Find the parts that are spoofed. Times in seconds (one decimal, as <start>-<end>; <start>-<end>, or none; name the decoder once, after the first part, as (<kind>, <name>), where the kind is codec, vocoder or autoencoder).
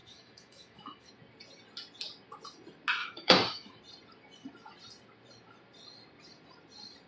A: 0.0-1.1 (autoencoder, DAC-VAE); 3.0-3.8